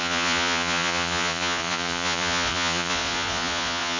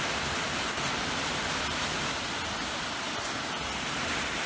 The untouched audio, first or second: second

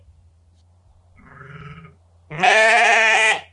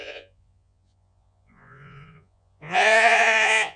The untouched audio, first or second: first